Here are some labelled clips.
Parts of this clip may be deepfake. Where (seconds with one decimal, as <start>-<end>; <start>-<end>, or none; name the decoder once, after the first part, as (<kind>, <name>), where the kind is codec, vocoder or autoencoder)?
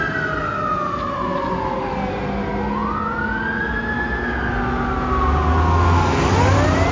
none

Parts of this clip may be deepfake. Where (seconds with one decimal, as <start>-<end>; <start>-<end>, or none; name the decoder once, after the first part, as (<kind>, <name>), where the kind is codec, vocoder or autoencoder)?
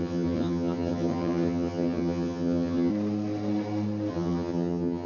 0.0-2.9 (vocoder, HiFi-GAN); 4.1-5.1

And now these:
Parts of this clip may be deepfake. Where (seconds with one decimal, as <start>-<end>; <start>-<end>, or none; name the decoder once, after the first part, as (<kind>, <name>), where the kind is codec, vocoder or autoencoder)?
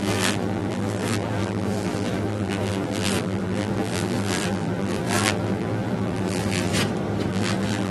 0.0-6.7 (vocoder, BigVGAN v2); 7.3-7.9